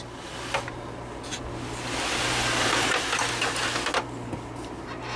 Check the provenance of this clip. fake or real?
real